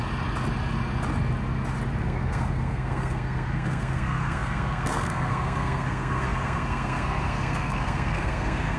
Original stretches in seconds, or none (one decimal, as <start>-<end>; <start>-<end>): 0.0-2.0